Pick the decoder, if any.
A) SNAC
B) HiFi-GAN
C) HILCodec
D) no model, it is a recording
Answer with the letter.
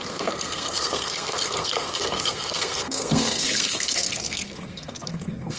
A